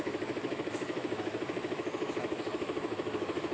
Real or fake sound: fake